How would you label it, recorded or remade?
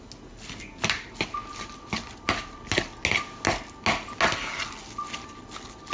recorded